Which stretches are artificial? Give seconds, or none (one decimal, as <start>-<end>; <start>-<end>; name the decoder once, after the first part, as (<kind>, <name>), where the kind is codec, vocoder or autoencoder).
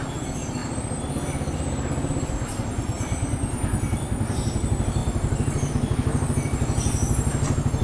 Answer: none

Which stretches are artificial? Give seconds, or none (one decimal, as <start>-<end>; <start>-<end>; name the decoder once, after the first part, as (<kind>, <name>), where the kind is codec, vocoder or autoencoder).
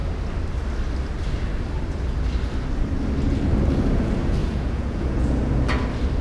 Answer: 4.4-5.5 (vocoder, Vocos)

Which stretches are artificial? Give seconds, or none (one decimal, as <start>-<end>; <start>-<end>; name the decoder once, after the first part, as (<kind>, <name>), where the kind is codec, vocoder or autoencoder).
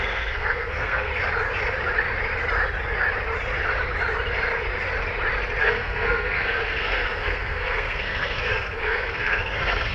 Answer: 0.0-1.1 (codec, SNAC); 5.6-9.9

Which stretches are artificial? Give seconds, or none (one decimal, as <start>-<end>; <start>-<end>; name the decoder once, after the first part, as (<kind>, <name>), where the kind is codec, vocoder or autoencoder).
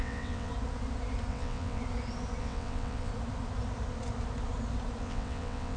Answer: 0.0-0.5 (vocoder, WaveNeXt); 1.3-1.8; 2.4-3.1; 5.0-5.8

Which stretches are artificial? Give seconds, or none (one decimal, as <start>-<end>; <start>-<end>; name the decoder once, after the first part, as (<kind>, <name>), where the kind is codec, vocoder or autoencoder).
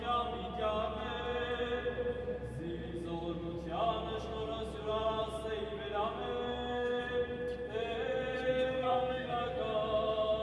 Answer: 6.5-7.0 (codec, SNAC); 8.5-9.4